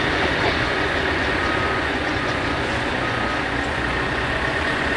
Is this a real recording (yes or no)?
no